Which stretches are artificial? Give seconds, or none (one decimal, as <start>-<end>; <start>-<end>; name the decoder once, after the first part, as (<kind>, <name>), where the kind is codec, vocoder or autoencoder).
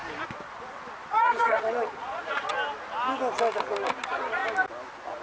1.1-2.5 (vocoder, Vocos); 4.0-4.4